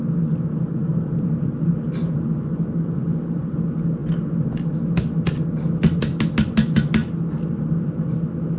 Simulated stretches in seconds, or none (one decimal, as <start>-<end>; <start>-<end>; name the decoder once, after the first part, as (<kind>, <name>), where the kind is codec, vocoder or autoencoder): 0.9-1.7 (vocoder, BigVGAN v2)